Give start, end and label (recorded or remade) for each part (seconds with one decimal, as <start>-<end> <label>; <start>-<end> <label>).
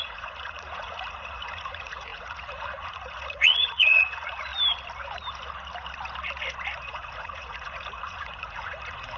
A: 0.0-4.5 remade; 4.5-6.8 recorded; 6.8-9.2 remade